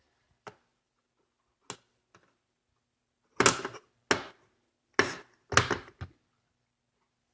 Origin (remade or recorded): recorded